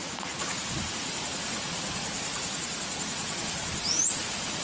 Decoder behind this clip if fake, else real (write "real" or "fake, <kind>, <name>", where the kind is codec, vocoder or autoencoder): fake, vocoder, Vocos